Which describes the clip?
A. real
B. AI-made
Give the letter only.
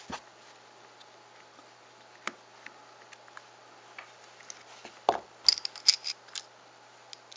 A